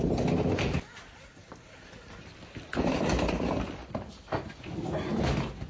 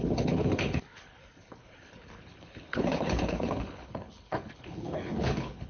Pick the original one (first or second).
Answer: first